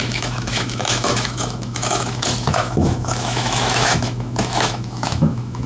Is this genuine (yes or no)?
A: no